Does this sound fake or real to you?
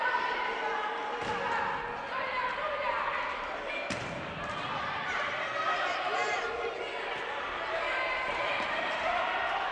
real